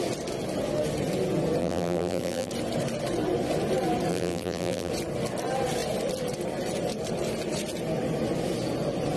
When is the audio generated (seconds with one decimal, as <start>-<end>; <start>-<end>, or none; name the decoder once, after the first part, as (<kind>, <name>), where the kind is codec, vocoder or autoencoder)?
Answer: 1.6-2.5 (vocoder, BigVGAN v2); 4.1-4.9